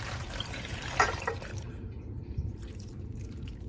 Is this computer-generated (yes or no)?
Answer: yes